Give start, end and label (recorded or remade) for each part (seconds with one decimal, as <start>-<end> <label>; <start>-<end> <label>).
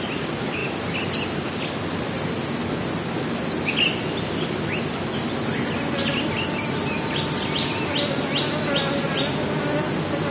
0.0-10.3 recorded